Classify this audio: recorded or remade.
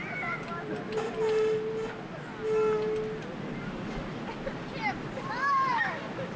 recorded